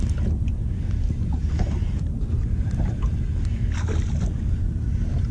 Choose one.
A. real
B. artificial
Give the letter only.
A